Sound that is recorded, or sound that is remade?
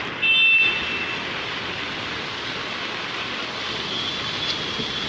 recorded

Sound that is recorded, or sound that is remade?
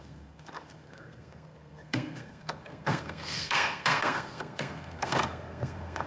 remade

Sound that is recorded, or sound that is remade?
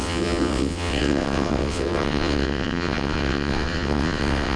remade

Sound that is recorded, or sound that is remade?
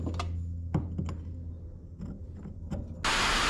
recorded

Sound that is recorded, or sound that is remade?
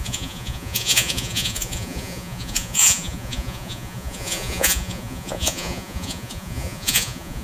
remade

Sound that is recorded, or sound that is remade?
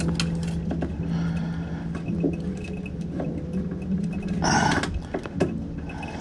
recorded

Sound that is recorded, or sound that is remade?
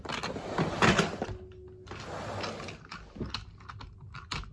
recorded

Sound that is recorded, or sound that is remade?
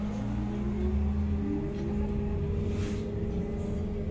recorded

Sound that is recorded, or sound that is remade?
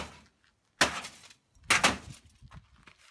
recorded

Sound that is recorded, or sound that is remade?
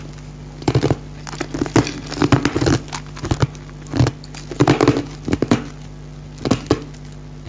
recorded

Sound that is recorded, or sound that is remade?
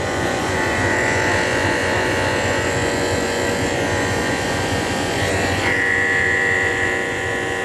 remade